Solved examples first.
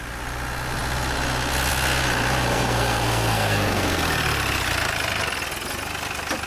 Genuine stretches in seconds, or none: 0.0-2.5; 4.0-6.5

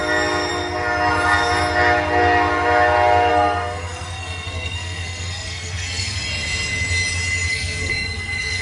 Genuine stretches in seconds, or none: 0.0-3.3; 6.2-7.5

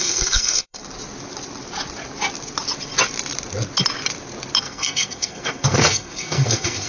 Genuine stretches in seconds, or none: 0.8-4.6

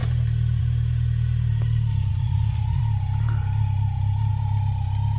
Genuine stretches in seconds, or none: 0.0-2.1; 2.8-5.2

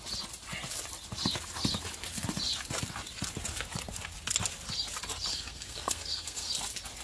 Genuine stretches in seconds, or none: 0.0-5.3; 6.5-7.0

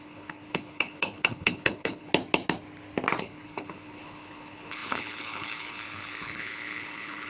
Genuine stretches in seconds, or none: 2.1-3.2

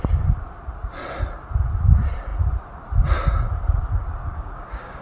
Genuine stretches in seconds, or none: 0.0-4.2

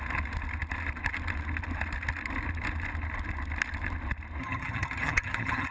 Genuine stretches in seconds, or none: 0.0-4.4